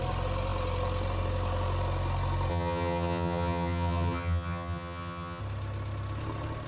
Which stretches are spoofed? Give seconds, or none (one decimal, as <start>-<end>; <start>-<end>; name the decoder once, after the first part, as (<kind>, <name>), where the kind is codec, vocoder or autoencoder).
2.5-5.4 (vocoder, HiFi-GAN)